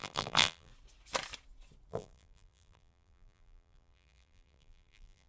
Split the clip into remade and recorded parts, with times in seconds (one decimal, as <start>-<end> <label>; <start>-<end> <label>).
0.0-0.7 remade; 0.7-1.9 recorded; 1.9-5.3 remade